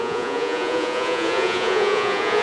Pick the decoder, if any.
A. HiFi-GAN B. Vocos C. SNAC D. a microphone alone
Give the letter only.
B